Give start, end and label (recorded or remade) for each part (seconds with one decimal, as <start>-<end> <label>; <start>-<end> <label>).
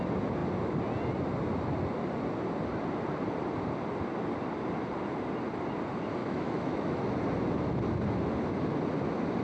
0.0-6.2 recorded; 6.2-7.1 remade; 7.1-9.4 recorded